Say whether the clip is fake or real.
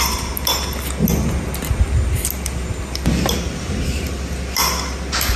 real